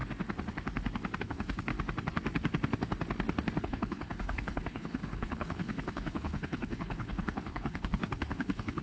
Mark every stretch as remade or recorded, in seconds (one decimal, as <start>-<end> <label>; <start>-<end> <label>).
0.0-1.2 recorded; 1.2-1.7 remade; 1.7-3.6 recorded; 3.6-8.8 remade